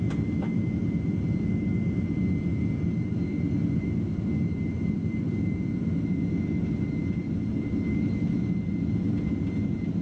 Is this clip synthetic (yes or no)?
yes